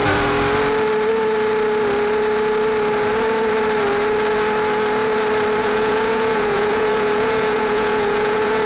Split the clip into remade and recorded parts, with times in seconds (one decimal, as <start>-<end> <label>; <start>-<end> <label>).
0.0-5.6 recorded; 5.6-8.7 remade